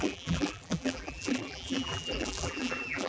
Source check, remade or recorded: remade